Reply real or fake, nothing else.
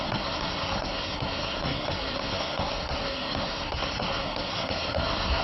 fake